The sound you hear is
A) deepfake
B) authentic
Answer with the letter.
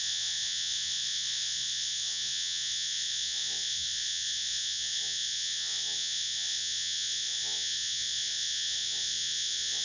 A